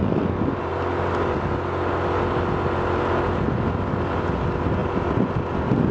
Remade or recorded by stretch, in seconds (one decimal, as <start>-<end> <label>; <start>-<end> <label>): 0.0-5.9 recorded